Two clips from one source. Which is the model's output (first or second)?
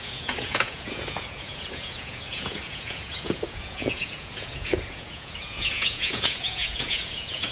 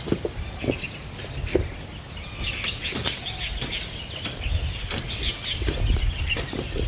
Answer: first